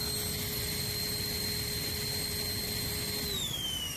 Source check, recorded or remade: recorded